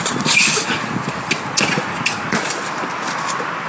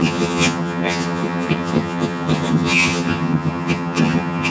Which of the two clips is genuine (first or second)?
first